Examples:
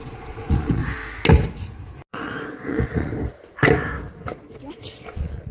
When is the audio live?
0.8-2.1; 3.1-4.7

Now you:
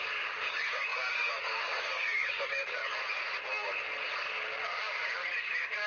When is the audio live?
2.8-4.8

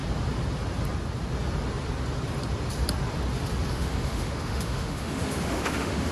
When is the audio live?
0.0-3.7

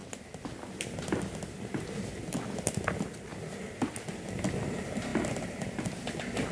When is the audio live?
0.0-6.5

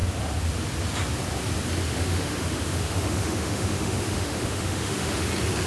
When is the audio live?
0.0-1.9; 5.3-5.7

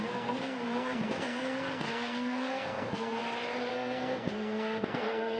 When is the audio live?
3.2-3.7

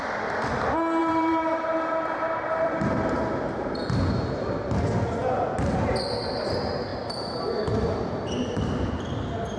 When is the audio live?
0.0-1.0; 4.7-6.9; 8.9-9.6